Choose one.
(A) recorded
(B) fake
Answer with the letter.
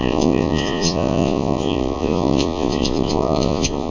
B